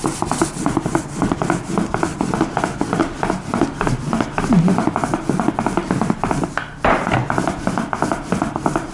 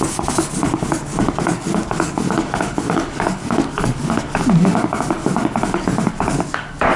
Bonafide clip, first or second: first